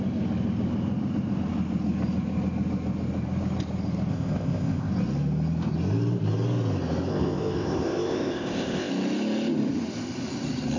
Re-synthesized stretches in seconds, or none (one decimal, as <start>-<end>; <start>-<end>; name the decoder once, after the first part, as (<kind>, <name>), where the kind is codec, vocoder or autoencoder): 4.1-4.9 (codec, ZipCodec); 7.1-8.9